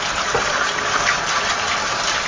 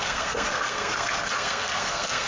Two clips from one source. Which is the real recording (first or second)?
first